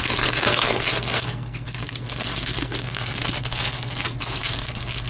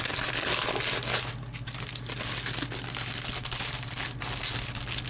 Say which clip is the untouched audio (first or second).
second